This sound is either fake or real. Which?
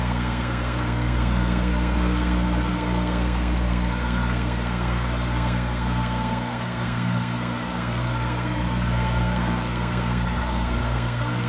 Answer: fake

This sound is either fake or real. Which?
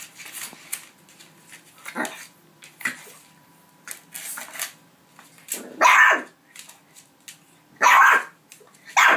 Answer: real